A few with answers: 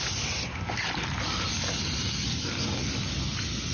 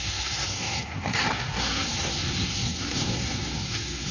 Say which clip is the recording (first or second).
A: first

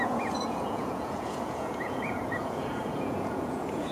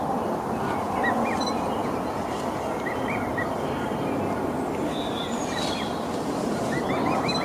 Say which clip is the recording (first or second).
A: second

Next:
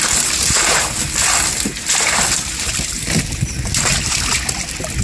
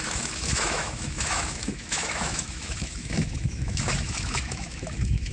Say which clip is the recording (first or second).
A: first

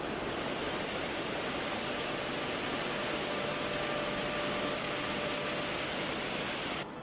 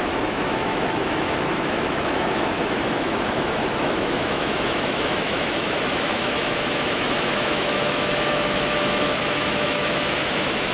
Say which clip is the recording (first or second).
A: first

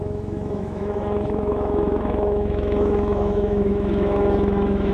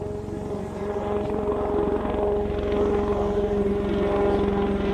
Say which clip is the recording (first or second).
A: second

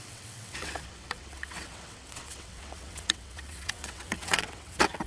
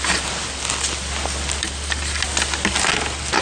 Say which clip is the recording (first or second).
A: second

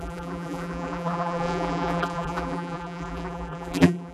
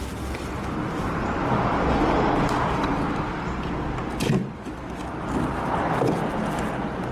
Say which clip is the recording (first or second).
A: second